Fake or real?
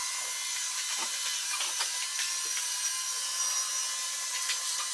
real